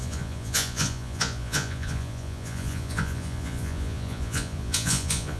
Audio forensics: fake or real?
fake